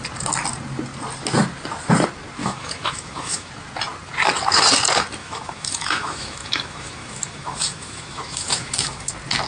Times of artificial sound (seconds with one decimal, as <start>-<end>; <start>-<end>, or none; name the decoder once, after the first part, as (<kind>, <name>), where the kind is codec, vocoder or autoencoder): 2.4-3.5 (autoencoder, DAC-VAE); 5.2-9.1